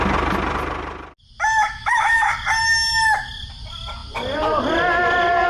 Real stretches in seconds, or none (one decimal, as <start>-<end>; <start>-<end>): 0.0-1.6; 2.3-5.5